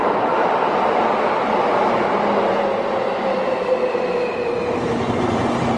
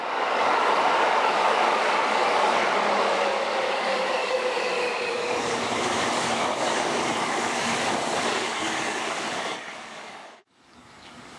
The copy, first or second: second